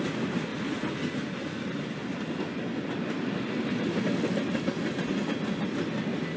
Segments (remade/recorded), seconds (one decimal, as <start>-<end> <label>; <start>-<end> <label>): 0.0-6.4 recorded